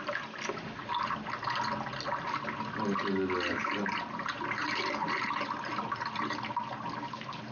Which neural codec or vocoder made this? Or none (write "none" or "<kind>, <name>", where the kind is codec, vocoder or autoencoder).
none